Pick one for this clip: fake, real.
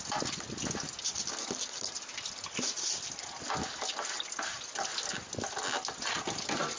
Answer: real